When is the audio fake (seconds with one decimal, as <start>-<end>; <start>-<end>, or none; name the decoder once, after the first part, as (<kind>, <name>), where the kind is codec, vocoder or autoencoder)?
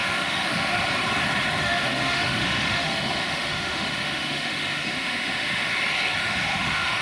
0.0-0.8 (autoencoder, DAC-VAE); 1.6-5.7; 6.2-7.0